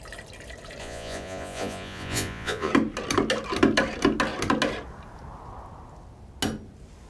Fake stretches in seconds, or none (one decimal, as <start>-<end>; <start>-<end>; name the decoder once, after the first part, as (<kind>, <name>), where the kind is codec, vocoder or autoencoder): 0.8-2.7 (vocoder, Vocos)